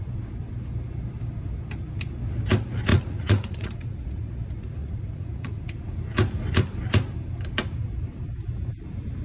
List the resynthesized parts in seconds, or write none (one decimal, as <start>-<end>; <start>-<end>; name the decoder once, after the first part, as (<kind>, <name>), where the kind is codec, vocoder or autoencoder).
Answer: 2.9-4.3 (vocoder, Vocos); 4.8-5.6